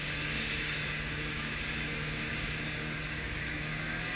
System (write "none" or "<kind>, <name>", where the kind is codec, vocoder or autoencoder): codec, DAC